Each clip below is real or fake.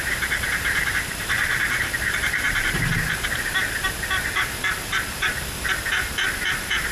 fake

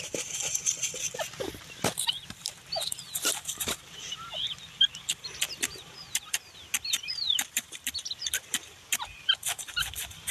fake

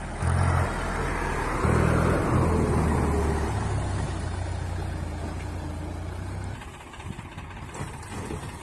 real